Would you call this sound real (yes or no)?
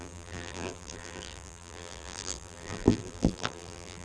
no